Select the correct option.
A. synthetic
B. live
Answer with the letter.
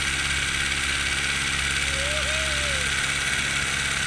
B